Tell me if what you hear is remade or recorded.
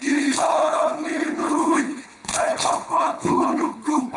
remade